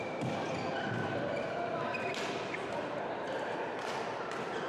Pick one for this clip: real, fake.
real